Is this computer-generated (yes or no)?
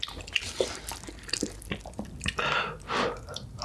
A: no